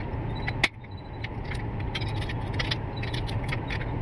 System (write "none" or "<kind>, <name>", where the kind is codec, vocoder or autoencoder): none